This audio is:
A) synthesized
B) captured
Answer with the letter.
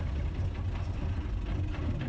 B